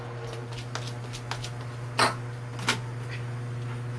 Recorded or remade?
recorded